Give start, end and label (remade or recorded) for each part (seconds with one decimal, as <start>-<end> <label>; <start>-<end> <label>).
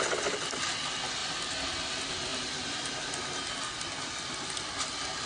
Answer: 0.0-5.3 recorded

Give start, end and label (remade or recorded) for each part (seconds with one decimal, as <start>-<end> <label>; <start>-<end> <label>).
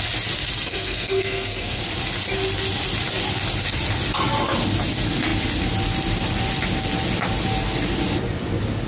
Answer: 0.0-0.7 recorded; 0.7-1.8 remade; 1.8-8.9 recorded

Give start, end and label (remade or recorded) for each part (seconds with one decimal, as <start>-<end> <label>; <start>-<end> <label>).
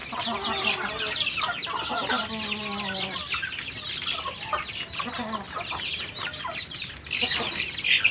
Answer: 0.0-8.1 recorded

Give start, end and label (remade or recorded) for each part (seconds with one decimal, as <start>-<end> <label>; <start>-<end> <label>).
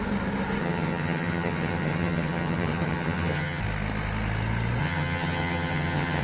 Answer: 0.0-0.6 recorded; 0.6-3.6 remade; 3.6-4.8 recorded; 4.8-6.2 remade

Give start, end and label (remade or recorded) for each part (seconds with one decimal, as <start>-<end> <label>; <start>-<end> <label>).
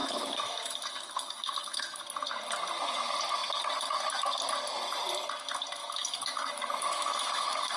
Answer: 0.0-2.0 remade; 2.0-5.8 recorded; 5.8-7.8 remade